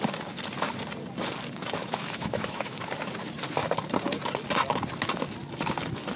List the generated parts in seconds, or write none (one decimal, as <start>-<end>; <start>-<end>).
1.8-2.8